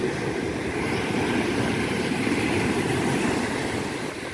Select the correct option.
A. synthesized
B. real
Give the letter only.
B